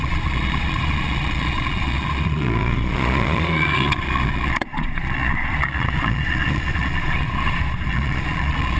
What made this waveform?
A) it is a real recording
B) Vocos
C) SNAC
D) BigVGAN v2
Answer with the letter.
B